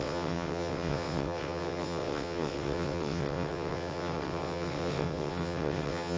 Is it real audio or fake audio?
fake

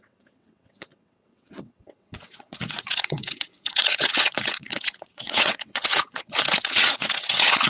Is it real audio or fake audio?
fake